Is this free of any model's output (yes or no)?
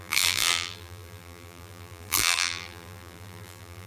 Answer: no